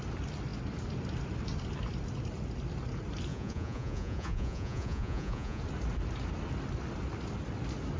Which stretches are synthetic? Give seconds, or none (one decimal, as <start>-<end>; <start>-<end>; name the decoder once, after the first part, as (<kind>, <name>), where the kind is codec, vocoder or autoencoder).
3.3-5.6 (vocoder, Vocos)